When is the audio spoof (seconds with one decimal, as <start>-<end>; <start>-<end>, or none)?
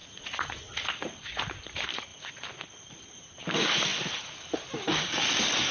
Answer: 0.0-1.4